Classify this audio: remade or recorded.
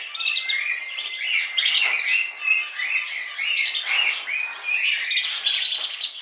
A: recorded